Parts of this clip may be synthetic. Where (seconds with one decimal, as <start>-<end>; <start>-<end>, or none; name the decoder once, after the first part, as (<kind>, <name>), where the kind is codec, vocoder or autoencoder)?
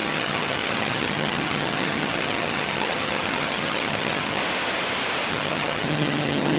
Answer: 0.0-4.4 (vocoder, HiFi-GAN); 5.3-6.6